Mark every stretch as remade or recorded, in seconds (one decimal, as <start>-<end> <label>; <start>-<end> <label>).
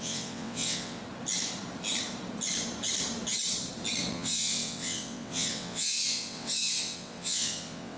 0.0-1.0 remade; 1.0-4.1 recorded; 4.1-8.0 remade